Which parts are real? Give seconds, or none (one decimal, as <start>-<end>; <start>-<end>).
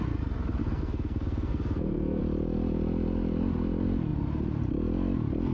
0.0-0.6; 2.2-5.5